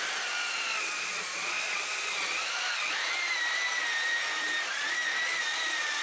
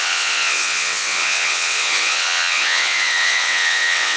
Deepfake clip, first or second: second